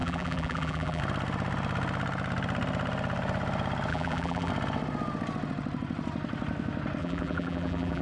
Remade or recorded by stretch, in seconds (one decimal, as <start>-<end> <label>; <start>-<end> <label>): 0.0-1.0 remade; 1.0-3.9 recorded; 3.9-4.5 remade; 4.5-7.0 recorded; 7.0-8.0 remade